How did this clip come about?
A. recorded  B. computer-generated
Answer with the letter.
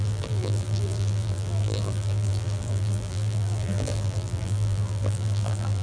B